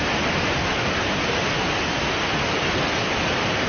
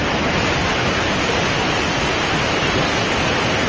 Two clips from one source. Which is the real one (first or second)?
first